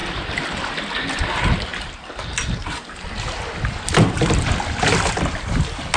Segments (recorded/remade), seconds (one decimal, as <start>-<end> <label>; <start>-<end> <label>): 0.0-6.0 recorded